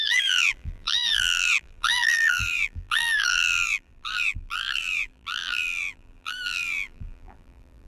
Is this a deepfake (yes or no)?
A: yes